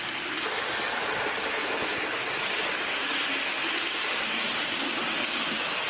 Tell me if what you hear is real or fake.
real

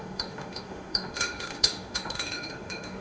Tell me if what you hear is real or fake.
fake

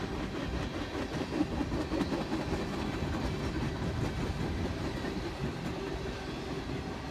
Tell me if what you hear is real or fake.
real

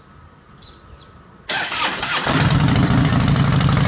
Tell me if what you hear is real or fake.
fake